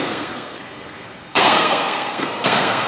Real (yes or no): no